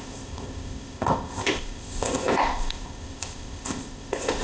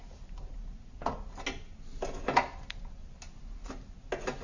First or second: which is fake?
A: first